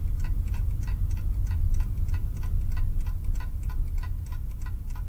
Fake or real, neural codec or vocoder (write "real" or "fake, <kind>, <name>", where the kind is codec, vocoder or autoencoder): real